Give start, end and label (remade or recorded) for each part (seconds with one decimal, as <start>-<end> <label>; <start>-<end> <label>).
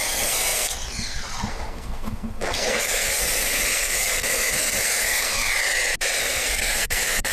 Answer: 0.0-5.5 remade; 5.5-6.2 recorded; 6.2-7.3 remade